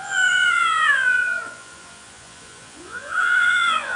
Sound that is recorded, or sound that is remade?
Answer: remade